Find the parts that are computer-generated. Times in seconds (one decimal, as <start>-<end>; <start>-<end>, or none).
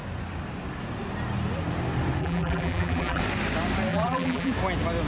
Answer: 2.2-3.2; 3.9-4.5